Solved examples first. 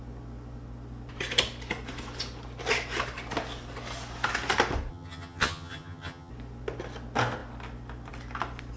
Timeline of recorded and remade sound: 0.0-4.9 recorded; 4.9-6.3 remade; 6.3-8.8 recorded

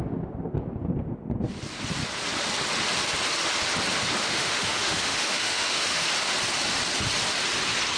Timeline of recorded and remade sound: 0.0-4.2 recorded; 4.2-6.1 remade; 6.1-8.0 recorded

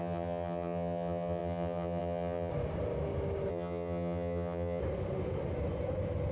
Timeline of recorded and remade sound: 0.0-2.5 remade; 2.5-3.5 recorded; 3.5-4.8 remade; 4.8-6.3 recorded

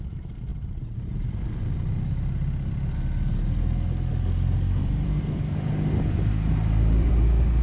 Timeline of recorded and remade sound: 0.0-4.8 recorded; 4.8-7.1 remade; 7.1-7.6 recorded

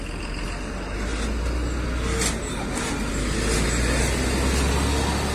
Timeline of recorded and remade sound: 0.0-5.3 recorded

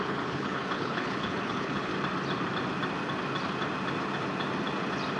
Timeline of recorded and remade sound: 0.0-1.9 remade; 1.9-5.2 recorded

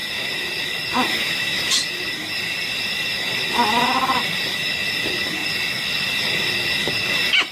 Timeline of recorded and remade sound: 0.0-1.1 recorded; 1.1-1.6 remade; 1.6-7.5 recorded

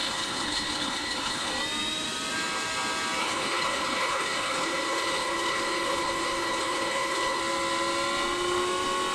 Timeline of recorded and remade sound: 0.0-1.5 remade; 1.5-3.2 recorded; 3.2-7.4 remade; 7.4-9.1 recorded